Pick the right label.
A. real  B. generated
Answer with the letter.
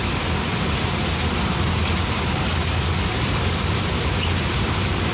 A